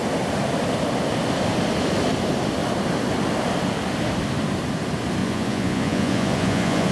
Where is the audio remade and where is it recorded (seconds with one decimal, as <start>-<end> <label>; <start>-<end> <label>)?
0.0-5.2 recorded; 5.2-6.9 remade